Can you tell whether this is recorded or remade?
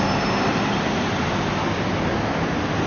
recorded